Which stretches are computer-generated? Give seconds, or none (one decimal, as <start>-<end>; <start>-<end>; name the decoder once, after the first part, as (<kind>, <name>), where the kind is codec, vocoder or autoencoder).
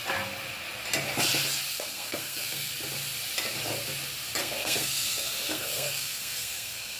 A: 1.7-2.7 (codec, SNAC); 4.4-7.0